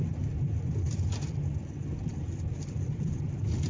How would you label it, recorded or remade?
recorded